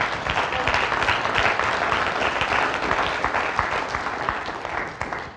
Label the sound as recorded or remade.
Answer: recorded